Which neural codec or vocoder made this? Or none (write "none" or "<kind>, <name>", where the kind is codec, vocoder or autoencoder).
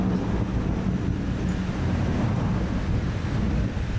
none